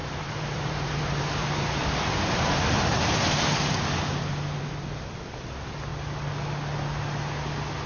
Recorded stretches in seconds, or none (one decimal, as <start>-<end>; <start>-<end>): 4.7-7.9